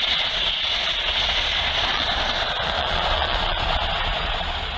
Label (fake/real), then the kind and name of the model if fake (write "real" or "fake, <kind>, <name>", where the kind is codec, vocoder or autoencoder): fake, vocoder, Vocos